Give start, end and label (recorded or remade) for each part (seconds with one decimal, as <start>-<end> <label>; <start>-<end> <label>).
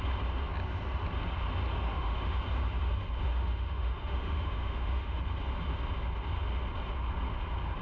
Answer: 0.0-1.9 recorded; 1.9-2.4 remade; 2.4-3.3 recorded; 3.3-5.2 remade; 5.2-7.8 recorded